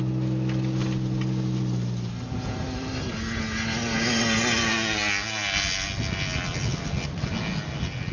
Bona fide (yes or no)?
yes